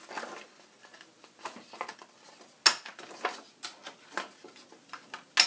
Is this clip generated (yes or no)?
no